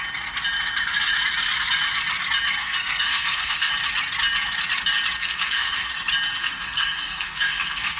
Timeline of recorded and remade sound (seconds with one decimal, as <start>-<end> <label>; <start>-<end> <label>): 0.0-2.6 recorded; 2.6-3.7 remade; 3.7-5.2 recorded; 5.2-5.9 remade; 5.9-6.4 recorded; 6.4-8.0 remade